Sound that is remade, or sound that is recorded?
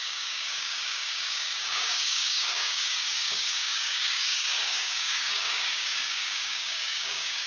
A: remade